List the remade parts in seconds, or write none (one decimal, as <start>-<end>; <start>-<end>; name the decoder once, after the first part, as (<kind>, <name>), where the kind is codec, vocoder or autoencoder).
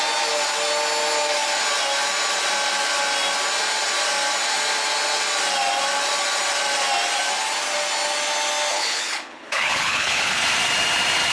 8.7-10.4 (codec, HILCodec)